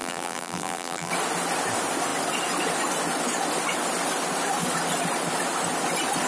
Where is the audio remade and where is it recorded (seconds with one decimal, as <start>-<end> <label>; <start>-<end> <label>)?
0.0-1.1 remade; 1.1-6.3 recorded